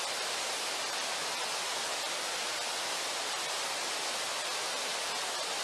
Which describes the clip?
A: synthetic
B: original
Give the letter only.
B